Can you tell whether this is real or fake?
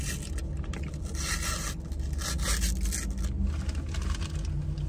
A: real